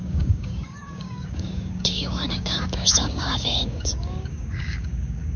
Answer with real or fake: fake